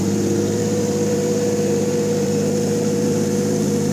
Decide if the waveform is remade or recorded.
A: remade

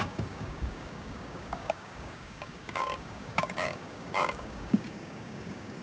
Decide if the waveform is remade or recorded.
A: remade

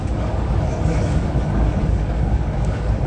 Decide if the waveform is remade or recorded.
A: remade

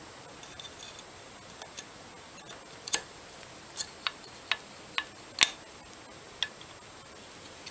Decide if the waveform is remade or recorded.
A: recorded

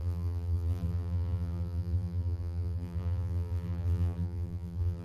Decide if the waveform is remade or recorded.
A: remade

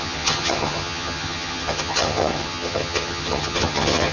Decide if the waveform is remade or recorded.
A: remade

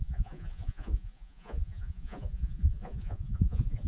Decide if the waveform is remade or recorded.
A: remade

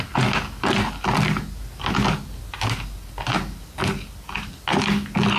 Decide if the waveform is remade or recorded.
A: recorded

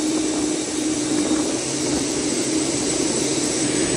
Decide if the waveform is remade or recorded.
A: remade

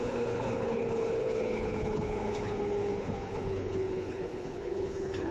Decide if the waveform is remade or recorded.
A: remade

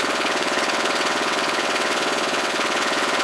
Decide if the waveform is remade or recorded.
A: remade